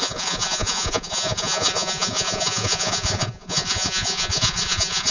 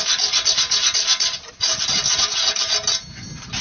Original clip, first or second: second